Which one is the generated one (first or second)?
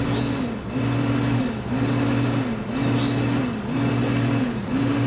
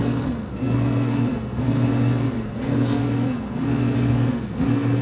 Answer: second